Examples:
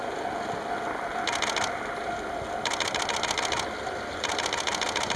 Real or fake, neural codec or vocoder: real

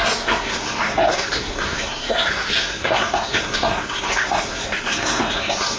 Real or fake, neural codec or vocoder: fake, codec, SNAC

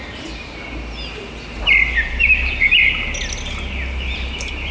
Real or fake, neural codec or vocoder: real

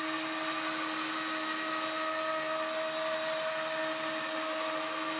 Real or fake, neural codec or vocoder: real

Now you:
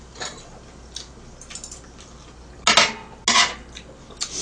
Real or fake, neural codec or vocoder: real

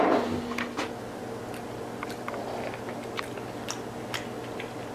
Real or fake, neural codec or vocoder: real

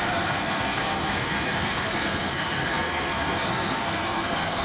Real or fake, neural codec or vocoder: fake, codec, SNAC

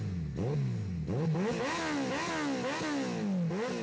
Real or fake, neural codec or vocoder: real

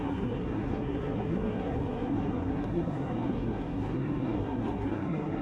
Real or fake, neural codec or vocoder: fake, codec, SNAC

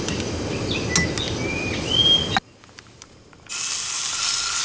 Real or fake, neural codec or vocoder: real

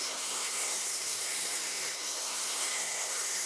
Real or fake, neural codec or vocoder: fake, codec, SNAC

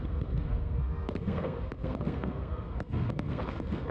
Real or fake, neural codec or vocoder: fake, codec, SNAC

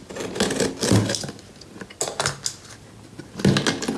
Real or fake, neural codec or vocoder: real